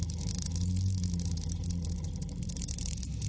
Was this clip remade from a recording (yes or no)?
no